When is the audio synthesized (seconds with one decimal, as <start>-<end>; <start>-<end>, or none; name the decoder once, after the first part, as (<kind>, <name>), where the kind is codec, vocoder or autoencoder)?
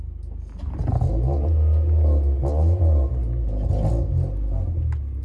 none